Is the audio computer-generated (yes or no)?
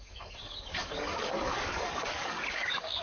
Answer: yes